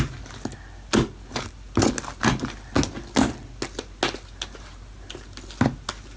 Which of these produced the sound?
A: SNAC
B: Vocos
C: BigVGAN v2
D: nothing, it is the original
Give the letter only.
D